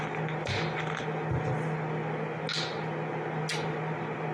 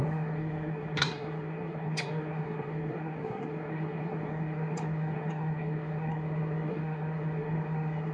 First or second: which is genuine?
first